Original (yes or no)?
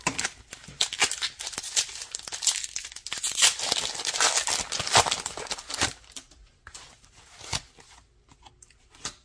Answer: yes